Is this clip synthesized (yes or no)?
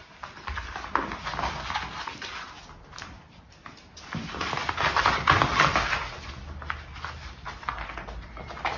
no